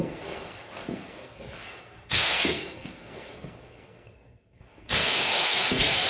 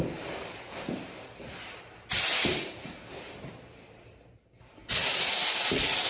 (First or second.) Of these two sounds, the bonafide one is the second